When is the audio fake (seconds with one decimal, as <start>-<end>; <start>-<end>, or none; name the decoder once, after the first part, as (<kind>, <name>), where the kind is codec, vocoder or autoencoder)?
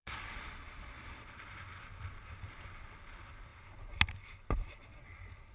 0.0-1.2 (vocoder, Vocos)